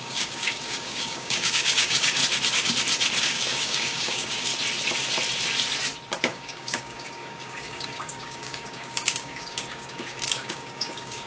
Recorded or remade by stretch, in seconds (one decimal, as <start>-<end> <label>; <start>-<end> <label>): 0.0-2.2 remade; 2.2-3.2 recorded; 3.2-4.5 remade; 4.5-6.2 recorded; 6.2-11.3 remade